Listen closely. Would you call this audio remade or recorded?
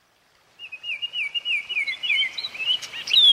remade